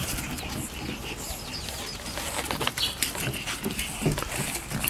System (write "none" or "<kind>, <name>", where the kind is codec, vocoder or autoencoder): none